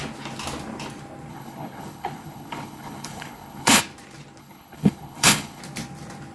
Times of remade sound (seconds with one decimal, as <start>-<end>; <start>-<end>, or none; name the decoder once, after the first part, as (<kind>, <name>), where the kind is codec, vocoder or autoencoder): 1.3-3.8 (codec, HILCodec); 4.4-5.6